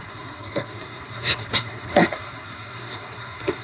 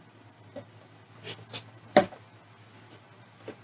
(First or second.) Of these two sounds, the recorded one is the second